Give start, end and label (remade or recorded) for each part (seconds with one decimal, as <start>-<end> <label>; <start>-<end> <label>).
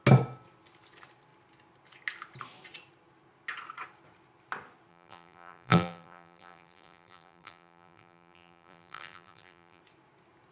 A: 0.0-4.9 recorded; 4.9-9.8 remade; 9.8-10.5 recorded